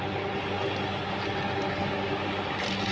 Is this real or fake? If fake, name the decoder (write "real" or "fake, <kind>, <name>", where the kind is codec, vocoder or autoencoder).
real